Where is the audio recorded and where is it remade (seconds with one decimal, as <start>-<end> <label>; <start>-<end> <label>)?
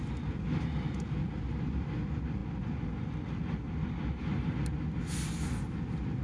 0.0-6.2 recorded